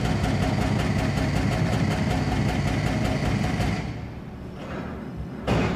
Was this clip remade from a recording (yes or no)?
no